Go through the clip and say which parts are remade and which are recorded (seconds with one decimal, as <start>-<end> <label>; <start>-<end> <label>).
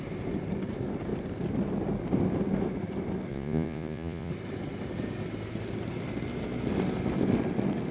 0.0-3.3 recorded; 3.3-4.3 remade; 4.3-7.9 recorded